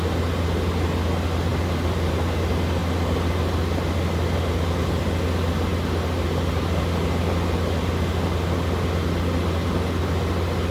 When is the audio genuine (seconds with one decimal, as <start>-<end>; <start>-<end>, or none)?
0.0-10.7